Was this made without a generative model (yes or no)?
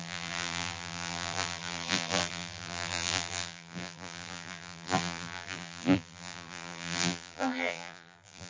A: no